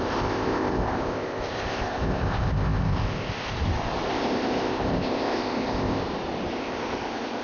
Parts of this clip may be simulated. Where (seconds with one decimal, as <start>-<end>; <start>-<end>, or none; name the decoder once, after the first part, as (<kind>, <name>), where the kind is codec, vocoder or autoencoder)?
0.0-3.5 (codec, ZipCodec); 4.1-6.0; 6.5-7.4